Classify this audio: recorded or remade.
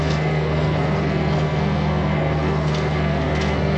remade